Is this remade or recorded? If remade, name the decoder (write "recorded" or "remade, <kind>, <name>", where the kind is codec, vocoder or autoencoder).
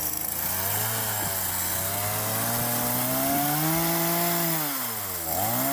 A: recorded